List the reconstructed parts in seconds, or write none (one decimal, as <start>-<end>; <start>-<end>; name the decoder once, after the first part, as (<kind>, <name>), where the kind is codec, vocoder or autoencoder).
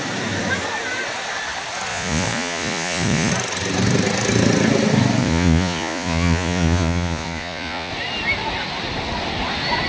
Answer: 1.9-3.3 (vocoder, Vocos); 5.2-7.9